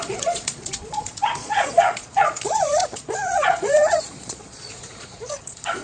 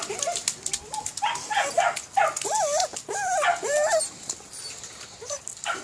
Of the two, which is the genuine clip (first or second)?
second